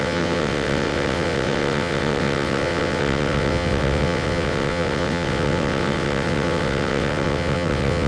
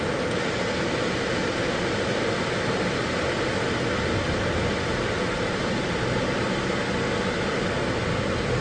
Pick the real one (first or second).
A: second